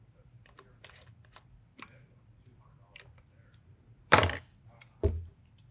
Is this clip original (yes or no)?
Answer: no